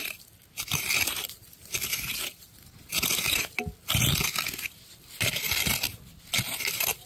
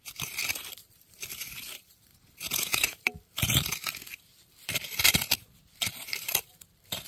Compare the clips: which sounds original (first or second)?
first